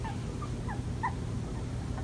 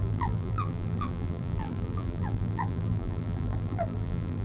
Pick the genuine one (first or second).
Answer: first